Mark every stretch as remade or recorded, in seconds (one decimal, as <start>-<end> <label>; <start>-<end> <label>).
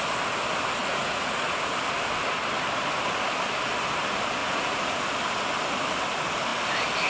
0.0-0.8 recorded; 0.8-1.7 remade; 1.7-4.4 recorded; 4.4-5.0 remade; 5.0-7.1 recorded